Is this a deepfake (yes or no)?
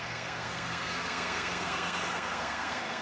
yes